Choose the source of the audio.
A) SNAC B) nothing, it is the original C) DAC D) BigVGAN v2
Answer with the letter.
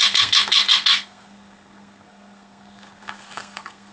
A